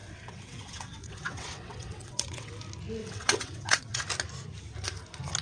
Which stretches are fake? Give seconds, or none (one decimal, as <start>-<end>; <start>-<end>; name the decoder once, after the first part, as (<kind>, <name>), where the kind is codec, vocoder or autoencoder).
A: 0.0-2.5 (vocoder, WaveNeXt); 3.0-4.0